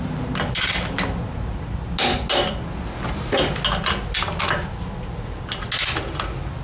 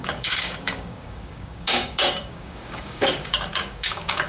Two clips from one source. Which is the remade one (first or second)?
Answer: second